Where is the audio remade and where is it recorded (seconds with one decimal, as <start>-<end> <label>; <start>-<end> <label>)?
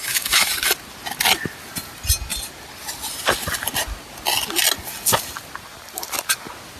0.0-0.5 remade; 0.5-6.8 recorded